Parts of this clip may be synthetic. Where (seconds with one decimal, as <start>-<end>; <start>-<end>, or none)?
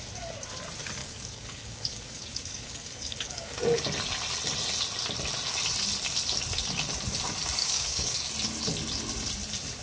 1.0-3.8; 7.6-8.3